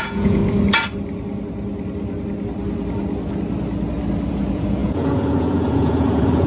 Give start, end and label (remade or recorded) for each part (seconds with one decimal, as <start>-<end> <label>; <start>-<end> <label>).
0.0-0.4 remade; 0.4-4.3 recorded; 4.3-6.5 remade